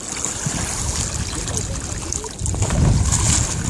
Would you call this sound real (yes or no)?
yes